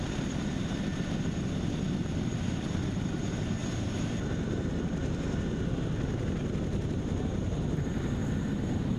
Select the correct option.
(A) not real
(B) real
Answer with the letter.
B